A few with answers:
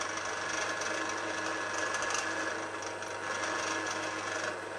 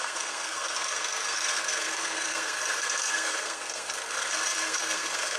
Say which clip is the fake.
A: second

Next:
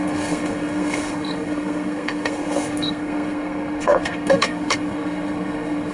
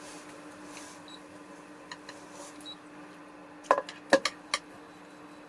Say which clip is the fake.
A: first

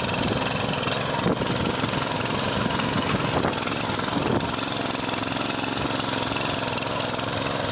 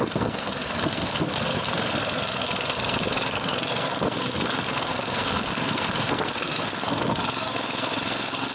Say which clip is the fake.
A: second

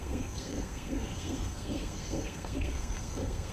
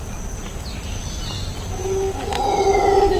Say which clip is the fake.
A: first